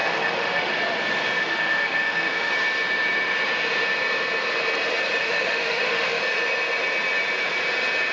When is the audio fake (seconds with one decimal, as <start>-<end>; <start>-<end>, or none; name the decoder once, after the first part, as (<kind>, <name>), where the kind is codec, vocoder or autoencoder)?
0.0-0.7 (autoencoder, DAC-VAE); 1.4-2.5; 5.2-6.2